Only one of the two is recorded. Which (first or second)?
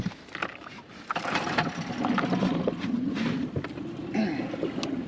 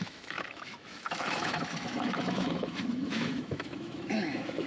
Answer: first